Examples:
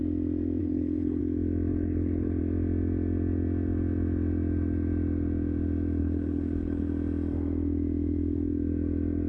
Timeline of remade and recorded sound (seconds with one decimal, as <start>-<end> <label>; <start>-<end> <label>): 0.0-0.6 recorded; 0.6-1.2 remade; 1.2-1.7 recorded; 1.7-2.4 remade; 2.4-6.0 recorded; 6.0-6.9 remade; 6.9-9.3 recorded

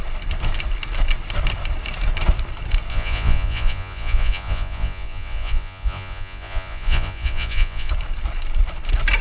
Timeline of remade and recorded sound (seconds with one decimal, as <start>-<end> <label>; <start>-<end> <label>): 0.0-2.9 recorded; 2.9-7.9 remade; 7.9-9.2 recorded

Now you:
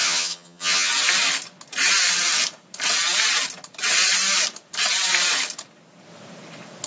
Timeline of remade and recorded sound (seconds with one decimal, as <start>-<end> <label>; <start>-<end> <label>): 0.0-0.9 remade; 0.9-6.9 recorded

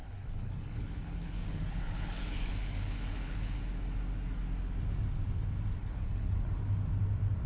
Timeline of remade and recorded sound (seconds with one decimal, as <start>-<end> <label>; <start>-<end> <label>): 0.0-3.6 remade; 3.6-5.8 recorded; 5.8-6.5 remade; 6.5-7.5 recorded

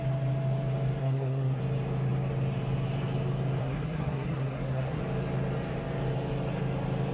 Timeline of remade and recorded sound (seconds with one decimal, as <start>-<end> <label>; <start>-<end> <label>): 0.0-1.0 recorded; 1.0-1.6 remade; 1.6-3.6 recorded; 3.6-5.0 remade; 5.0-7.1 recorded

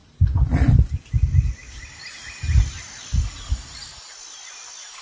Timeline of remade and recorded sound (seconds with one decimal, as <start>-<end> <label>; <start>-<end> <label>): 0.0-5.0 recorded

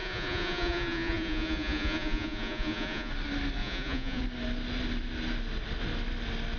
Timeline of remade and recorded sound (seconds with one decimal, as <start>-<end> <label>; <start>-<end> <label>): 0.0-3.1 remade; 3.1-3.6 recorded; 3.6-4.2 remade; 4.2-6.6 recorded